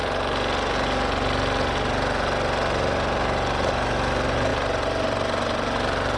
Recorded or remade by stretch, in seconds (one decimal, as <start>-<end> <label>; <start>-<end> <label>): 0.0-6.2 recorded